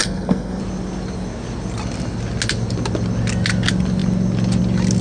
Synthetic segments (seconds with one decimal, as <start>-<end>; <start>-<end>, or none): 0.0-0.6